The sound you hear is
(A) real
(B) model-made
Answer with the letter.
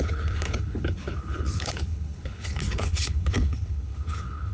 B